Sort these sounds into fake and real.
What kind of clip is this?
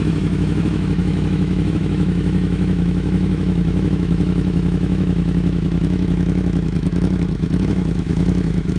fake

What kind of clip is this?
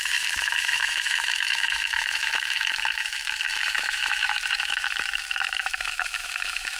fake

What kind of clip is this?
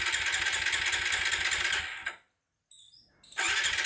real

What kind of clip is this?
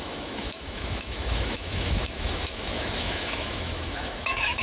fake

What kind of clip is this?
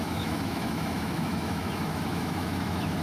fake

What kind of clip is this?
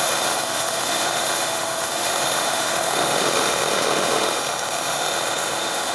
fake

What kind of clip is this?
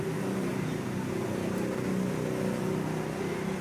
real